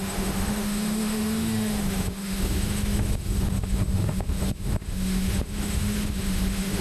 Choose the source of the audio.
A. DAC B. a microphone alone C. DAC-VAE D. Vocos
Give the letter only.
C